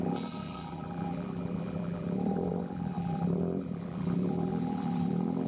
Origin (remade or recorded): remade